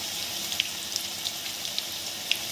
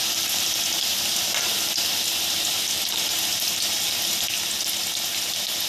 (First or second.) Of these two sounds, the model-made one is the first